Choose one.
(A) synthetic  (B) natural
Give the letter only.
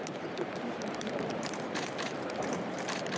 A